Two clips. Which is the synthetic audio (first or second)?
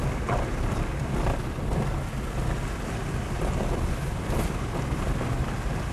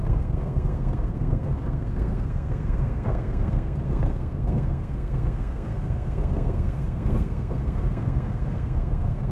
second